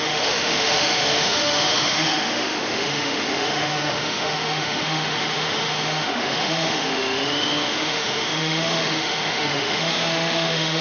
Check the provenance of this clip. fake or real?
fake